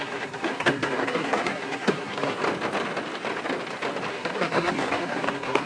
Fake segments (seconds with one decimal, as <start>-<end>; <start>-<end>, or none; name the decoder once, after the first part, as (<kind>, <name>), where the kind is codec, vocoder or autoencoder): 0.0-2.4 (codec, SNAC); 4.1-5.7